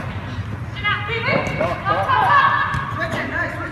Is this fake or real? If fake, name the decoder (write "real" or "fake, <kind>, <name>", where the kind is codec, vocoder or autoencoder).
real